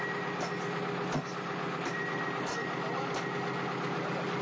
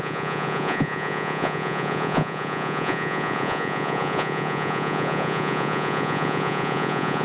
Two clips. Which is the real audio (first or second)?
first